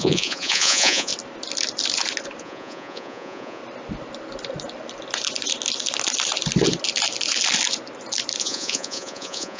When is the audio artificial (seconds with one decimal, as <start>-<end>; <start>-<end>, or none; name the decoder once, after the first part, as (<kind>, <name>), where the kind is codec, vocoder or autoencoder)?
0.0-1.1 (vocoder, Vocos); 2.4-3.6; 8.4-9.6